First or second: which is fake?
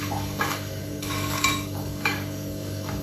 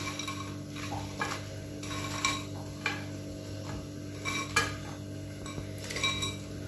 first